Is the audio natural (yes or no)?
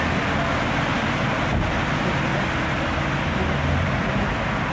yes